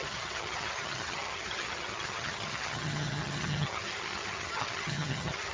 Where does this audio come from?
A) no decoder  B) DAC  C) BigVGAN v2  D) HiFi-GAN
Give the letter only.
D